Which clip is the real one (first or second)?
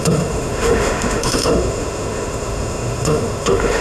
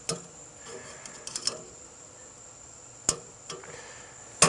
second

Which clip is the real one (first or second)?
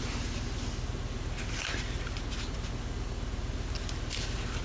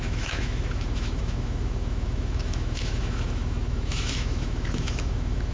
first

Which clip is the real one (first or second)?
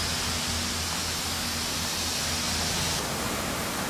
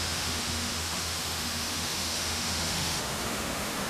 first